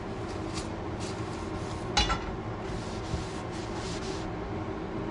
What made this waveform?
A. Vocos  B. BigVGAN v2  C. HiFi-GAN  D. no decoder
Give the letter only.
D